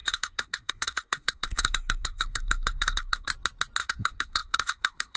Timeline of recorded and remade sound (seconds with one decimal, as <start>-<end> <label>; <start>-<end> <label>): 0.0-3.3 remade; 3.3-3.8 recorded; 3.8-5.2 remade